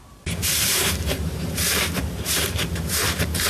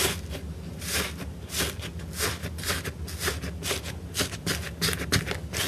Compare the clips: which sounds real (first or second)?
second